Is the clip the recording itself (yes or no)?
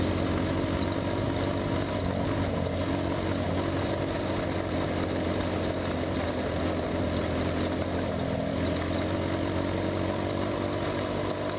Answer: yes